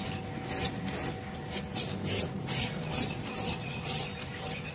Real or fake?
real